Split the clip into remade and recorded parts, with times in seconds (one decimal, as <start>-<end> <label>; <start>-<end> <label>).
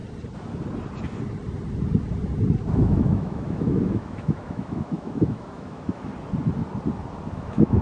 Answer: 0.0-2.7 recorded; 2.7-6.1 remade; 6.1-7.3 recorded; 7.3-7.8 remade